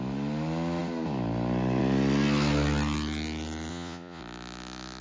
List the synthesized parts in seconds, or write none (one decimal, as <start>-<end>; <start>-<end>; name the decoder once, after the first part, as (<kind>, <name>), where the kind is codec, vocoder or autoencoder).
3.7-4.2 (vocoder, Vocos)